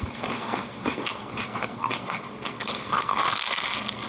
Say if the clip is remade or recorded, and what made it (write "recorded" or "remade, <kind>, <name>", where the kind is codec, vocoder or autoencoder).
remade, codec, SNAC